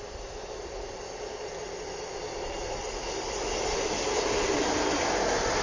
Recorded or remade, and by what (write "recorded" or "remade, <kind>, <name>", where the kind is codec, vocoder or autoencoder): recorded